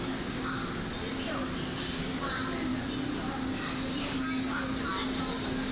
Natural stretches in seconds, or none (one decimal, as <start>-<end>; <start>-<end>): 0.6-1.7; 2.7-4.0